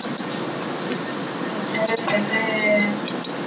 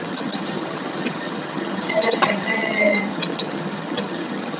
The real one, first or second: first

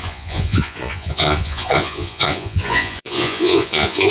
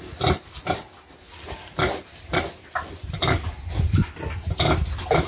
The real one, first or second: second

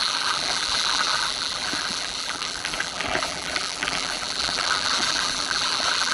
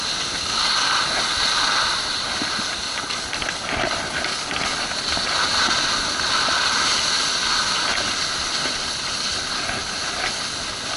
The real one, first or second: second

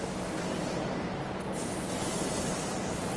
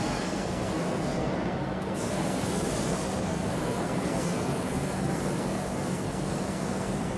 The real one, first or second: first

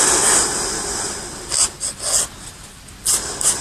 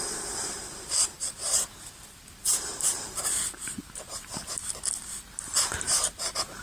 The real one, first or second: first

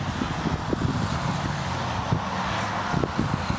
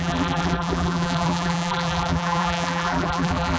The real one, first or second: first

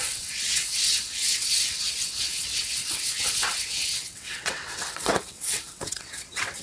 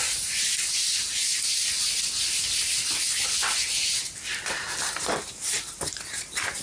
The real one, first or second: second